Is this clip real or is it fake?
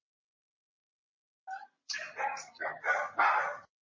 real